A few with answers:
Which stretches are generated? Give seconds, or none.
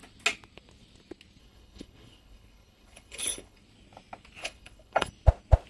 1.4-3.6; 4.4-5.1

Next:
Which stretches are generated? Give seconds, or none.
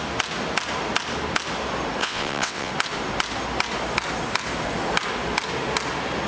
2.0-2.7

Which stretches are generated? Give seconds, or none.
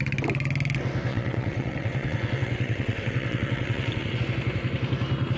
1.1-4.2